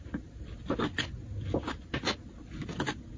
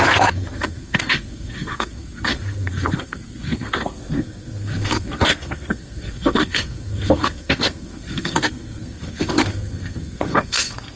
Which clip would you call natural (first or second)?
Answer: first